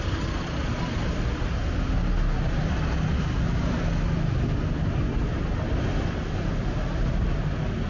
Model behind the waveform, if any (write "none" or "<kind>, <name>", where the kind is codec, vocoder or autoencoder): none